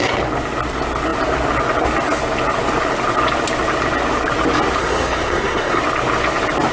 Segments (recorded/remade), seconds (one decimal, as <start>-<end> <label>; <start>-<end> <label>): 0.0-4.8 recorded; 4.8-5.8 remade; 5.8-6.7 recorded